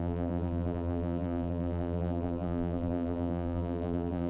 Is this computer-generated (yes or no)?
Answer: yes